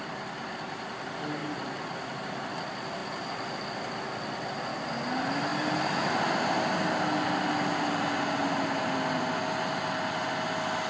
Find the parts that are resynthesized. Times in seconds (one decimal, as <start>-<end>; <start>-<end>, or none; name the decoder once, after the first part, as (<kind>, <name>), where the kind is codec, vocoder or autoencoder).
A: none